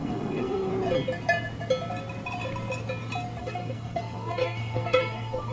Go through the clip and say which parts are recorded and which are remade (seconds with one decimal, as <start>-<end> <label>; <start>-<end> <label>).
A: 0.0-0.7 remade; 0.7-3.4 recorded; 3.4-5.5 remade